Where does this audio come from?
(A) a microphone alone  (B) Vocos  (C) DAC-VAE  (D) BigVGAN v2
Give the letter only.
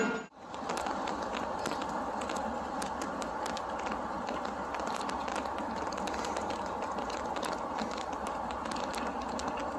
A